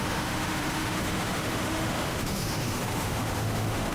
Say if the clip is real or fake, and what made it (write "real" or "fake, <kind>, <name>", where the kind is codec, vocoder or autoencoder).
fake, autoencoder, DAC-VAE